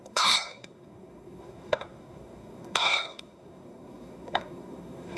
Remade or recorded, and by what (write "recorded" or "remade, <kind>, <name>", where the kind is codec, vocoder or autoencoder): remade, codec, SNAC